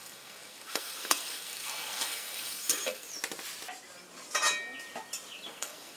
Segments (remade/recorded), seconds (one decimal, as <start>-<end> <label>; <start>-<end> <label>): 0.0-3.1 remade; 3.1-5.5 recorded; 5.5-6.0 remade